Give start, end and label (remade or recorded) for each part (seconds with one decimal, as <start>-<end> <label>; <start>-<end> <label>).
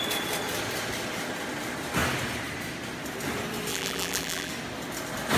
0.0-3.7 recorded; 3.7-4.5 remade; 4.5-5.4 recorded